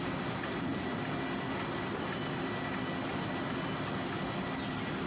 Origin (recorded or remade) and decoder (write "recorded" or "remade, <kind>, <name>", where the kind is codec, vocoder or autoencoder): recorded